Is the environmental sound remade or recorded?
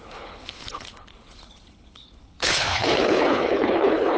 remade